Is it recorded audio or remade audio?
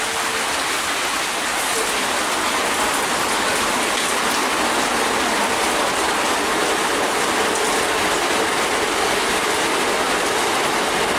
recorded